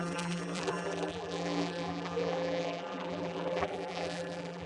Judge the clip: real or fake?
fake